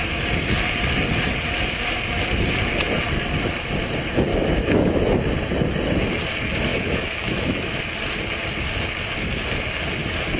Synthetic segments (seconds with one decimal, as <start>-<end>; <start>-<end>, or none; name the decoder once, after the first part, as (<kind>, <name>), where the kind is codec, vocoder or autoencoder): 4.3-5.0 (autoencoder, DAC-VAE); 6.7-7.8